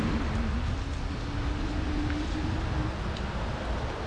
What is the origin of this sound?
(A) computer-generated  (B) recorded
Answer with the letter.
B